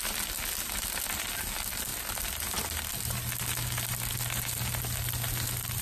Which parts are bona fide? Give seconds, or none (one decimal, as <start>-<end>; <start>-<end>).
0.0-5.8